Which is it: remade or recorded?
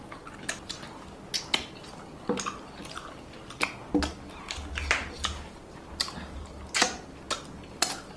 recorded